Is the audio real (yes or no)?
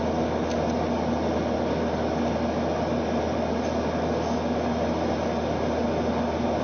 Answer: yes